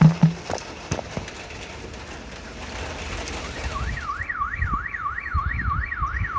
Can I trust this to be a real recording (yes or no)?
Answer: yes